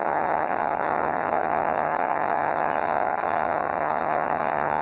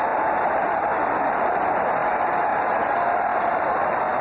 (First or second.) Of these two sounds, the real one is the second